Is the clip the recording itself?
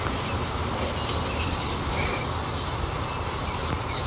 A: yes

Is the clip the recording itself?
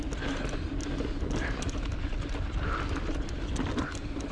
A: yes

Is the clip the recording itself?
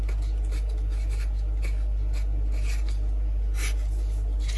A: yes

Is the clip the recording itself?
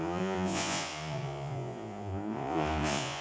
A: no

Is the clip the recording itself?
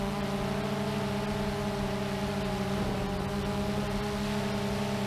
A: yes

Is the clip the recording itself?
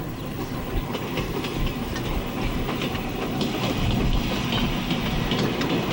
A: yes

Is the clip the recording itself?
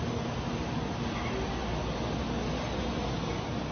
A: yes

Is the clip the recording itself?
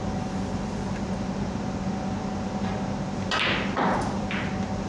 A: yes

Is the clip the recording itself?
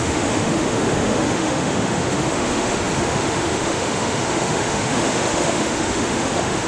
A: no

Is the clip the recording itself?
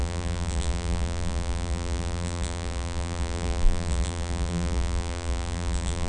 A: no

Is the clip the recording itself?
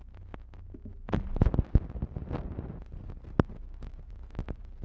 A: yes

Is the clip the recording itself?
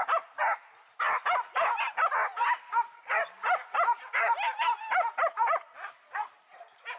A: yes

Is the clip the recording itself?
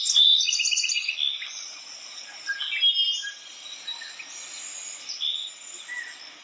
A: yes